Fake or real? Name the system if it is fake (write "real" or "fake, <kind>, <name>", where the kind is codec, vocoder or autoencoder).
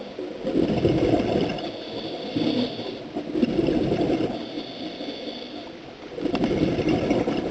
real